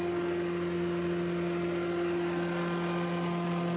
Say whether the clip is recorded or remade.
recorded